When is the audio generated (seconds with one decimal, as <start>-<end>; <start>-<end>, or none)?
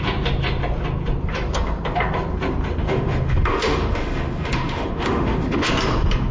2.8-5.7